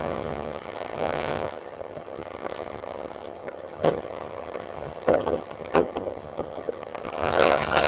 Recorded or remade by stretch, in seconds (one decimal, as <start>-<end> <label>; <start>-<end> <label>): 0.0-7.9 remade